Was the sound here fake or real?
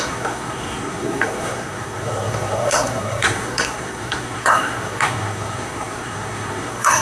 fake